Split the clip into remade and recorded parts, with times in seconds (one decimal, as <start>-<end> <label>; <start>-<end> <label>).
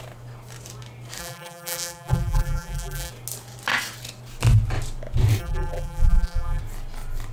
0.0-1.2 recorded; 1.2-3.1 remade; 3.1-5.4 recorded; 5.4-6.6 remade; 6.6-7.3 recorded